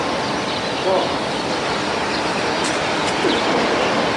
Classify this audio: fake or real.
real